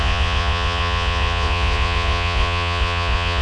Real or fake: fake